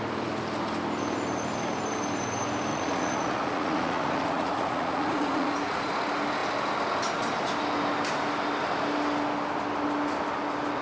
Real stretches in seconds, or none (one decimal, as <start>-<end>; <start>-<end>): 0.0-2.7; 5.9-10.8